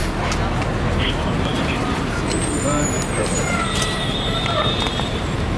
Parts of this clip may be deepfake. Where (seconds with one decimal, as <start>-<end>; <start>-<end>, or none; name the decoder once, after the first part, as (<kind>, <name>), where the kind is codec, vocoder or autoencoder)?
0.9-5.6 (vocoder, BigVGAN v2)